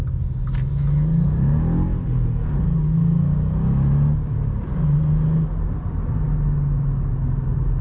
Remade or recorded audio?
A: recorded